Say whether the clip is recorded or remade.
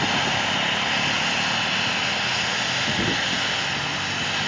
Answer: recorded